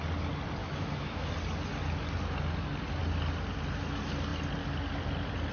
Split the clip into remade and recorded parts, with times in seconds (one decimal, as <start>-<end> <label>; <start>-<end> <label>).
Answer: 0.0-0.6 recorded; 0.6-1.3 remade; 1.3-5.5 recorded